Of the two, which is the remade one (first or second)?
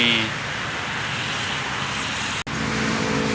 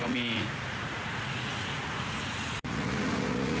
second